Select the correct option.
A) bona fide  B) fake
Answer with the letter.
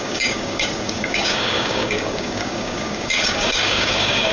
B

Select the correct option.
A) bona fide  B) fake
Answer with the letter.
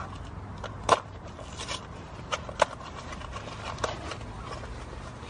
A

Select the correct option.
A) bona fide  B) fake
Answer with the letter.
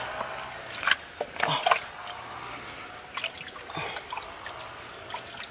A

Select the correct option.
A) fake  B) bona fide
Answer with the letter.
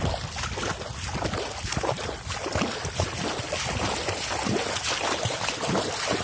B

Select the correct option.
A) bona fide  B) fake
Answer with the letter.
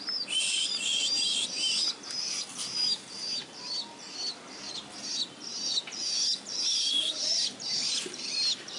A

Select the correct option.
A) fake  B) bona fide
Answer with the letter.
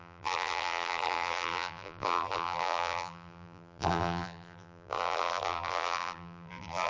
A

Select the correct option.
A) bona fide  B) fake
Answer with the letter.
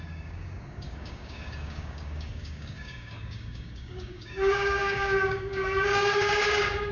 B